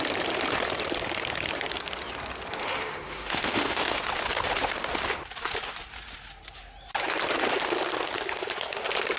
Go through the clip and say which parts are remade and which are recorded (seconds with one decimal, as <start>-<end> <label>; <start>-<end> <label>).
0.0-2.6 recorded; 2.6-4.0 remade; 4.0-9.2 recorded